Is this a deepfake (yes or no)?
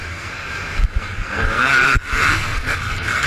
yes